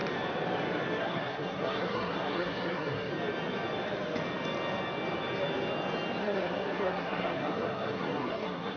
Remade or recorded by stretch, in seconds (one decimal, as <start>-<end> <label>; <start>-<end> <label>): 0.0-1.0 recorded; 1.0-3.1 remade; 3.1-6.2 recorded; 6.2-8.8 remade